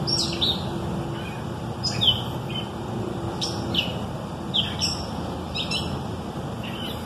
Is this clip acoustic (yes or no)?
yes